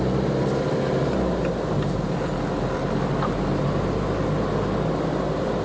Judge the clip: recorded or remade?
recorded